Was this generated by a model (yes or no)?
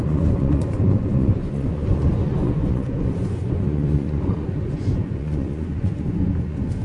yes